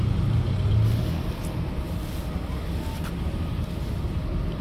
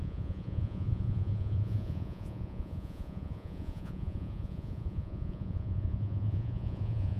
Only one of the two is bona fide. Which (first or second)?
first